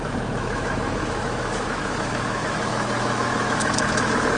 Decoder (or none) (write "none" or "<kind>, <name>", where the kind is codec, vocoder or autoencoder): autoencoder, DAC-VAE